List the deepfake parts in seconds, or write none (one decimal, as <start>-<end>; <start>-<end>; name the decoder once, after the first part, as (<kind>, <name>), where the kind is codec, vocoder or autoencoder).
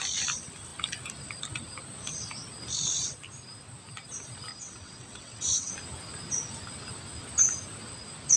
4.5-5.7 (vocoder, WaveNeXt)